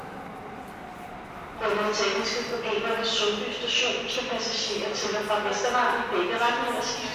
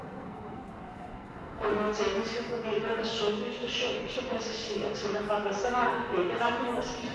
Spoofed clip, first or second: second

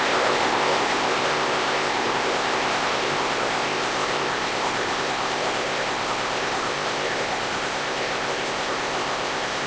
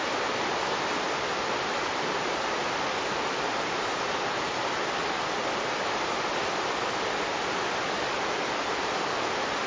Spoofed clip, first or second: first